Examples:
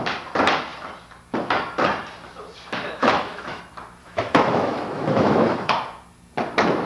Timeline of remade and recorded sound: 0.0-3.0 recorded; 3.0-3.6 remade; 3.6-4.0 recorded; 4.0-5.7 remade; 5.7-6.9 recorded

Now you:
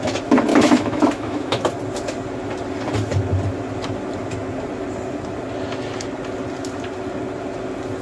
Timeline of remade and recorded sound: 0.0-0.5 recorded; 0.5-1.7 remade; 1.7-8.0 recorded